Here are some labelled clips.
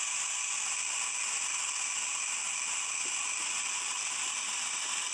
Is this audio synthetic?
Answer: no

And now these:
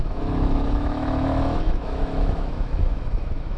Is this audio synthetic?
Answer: yes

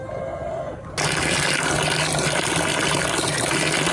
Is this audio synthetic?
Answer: no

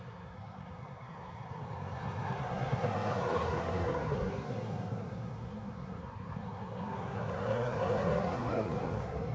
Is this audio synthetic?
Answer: yes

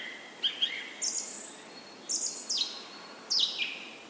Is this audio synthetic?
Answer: no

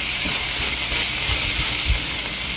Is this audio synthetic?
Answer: no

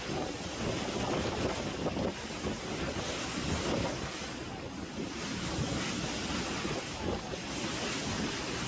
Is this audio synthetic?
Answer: no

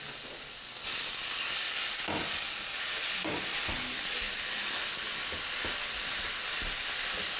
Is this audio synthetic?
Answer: no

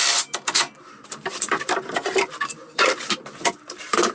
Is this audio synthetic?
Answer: yes